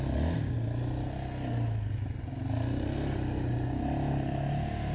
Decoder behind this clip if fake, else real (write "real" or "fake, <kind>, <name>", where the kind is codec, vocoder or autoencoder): real